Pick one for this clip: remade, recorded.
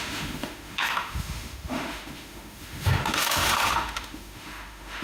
remade